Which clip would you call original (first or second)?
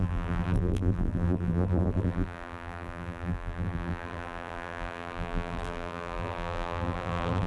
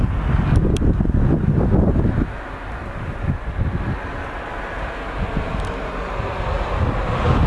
second